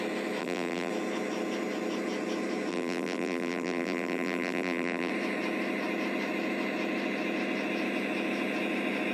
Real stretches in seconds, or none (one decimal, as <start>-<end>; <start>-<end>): 0.0-0.4; 0.9-2.7; 5.1-9.1